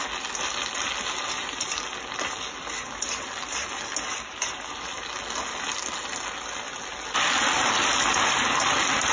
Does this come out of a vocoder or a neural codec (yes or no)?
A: no